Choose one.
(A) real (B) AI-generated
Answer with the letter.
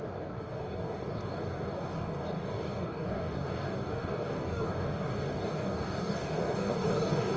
B